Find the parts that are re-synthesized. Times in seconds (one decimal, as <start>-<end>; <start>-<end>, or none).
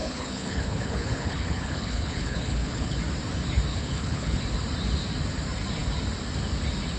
0.0-3.0; 3.7-4.4